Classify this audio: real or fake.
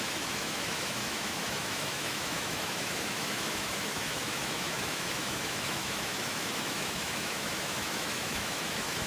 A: fake